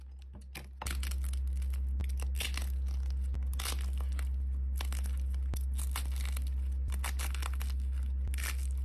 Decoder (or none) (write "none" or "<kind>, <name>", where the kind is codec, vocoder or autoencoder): none